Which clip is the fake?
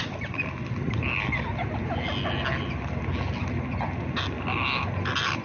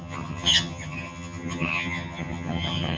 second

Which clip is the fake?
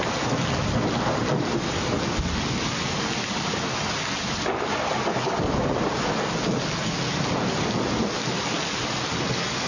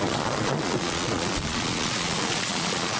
second